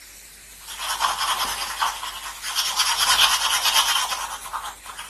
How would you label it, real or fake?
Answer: real